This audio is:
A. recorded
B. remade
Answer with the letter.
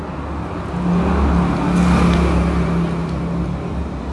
A